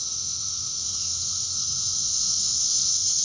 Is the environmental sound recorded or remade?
remade